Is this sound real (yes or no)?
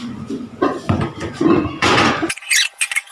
no